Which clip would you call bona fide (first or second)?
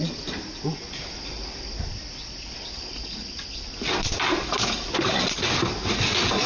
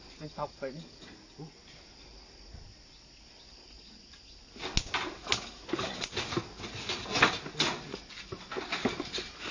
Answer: second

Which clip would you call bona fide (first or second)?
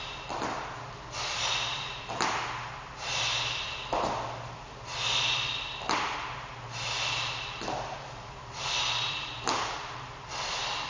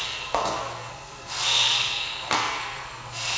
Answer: first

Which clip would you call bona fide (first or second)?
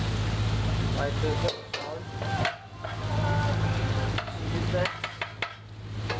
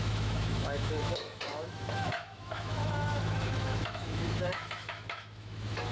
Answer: first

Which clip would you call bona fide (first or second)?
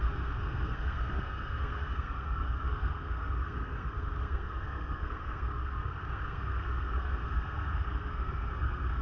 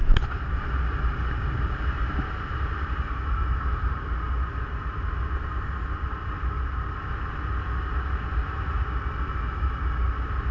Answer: second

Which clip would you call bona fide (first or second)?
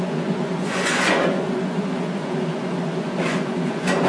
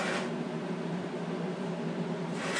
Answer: second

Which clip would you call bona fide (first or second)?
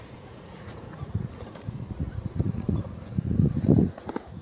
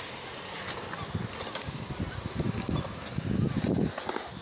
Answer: second